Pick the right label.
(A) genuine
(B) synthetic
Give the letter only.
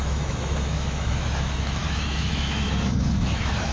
B